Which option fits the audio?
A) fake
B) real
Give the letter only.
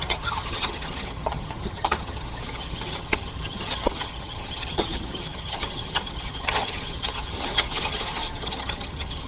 A